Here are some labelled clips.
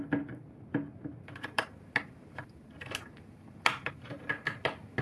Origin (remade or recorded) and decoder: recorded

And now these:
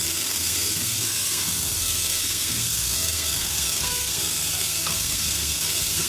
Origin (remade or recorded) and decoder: remade, codec, SNAC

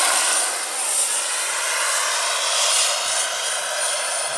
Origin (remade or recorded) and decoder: recorded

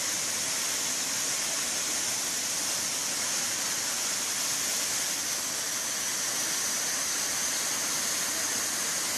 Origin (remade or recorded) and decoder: recorded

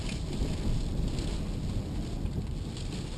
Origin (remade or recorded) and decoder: recorded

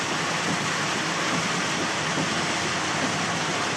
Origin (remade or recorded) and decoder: recorded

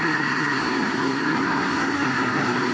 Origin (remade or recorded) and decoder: remade, codec, SNAC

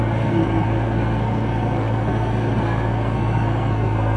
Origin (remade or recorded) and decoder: remade, codec, SNAC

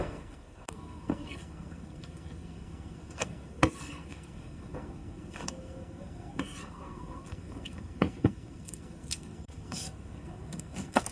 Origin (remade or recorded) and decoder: remade, codec, SNAC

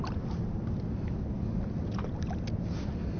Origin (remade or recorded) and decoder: recorded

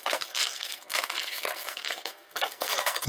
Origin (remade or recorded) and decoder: remade, codec, SNAC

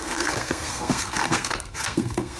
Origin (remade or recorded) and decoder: remade, codec, SNAC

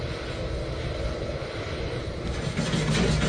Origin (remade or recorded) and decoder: recorded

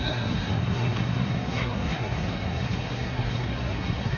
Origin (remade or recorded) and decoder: remade, codec, SNAC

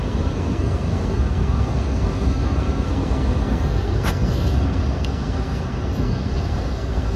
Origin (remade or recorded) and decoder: remade, codec, SNAC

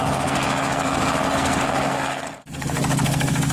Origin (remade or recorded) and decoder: remade, codec, SNAC